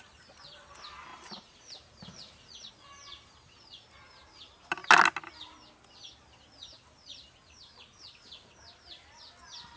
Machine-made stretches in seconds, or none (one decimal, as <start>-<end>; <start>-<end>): 1.1-2.7